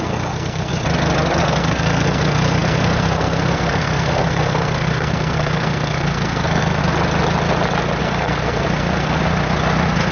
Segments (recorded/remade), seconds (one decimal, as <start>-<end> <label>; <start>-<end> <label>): 0.0-0.7 remade; 0.7-1.4 recorded; 1.4-6.8 remade; 6.8-8.0 recorded; 8.0-9.2 remade; 9.2-10.1 recorded